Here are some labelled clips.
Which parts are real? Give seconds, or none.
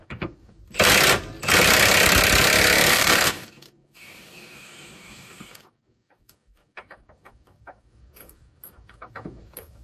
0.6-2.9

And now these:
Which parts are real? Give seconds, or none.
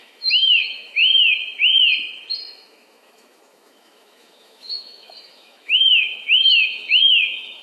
1.0-2.4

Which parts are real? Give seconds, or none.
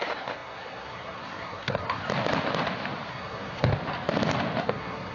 2.0-3.1; 3.7-4.6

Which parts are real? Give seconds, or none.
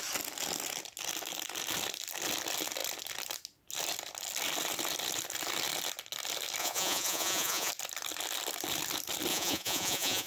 0.0-6.6; 7.7-9.3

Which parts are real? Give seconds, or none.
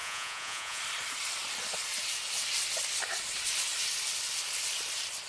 0.8-5.3